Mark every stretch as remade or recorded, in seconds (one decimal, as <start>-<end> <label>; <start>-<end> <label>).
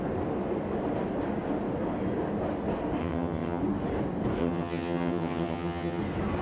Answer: 0.0-3.0 recorded; 3.0-3.6 remade; 3.6-4.4 recorded; 4.4-6.0 remade; 6.0-6.4 recorded